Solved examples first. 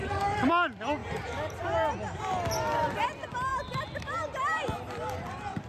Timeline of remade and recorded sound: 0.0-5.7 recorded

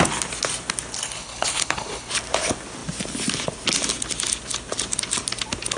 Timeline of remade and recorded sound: 0.0-1.0 recorded; 1.0-2.1 remade; 2.1-5.8 recorded

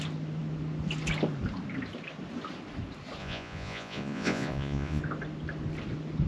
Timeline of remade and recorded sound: 0.0-3.2 recorded; 3.2-5.0 remade; 5.0-6.3 recorded

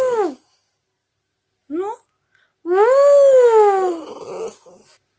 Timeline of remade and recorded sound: 0.0-5.2 recorded

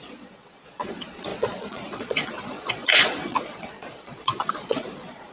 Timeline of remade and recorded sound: 0.0-5.3 remade

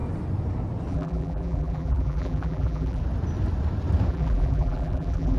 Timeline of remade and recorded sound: 0.0-0.9 recorded; 0.9-3.0 remade; 3.0-4.1 recorded; 4.1-5.4 remade

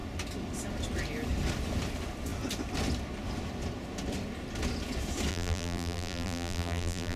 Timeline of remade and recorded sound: 0.0-5.3 recorded; 5.3-7.2 remade

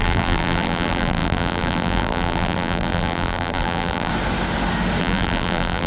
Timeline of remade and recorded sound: 0.0-4.1 remade; 4.1-5.0 recorded; 5.0-5.9 remade